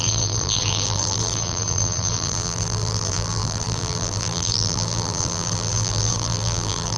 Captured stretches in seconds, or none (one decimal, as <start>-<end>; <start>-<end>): none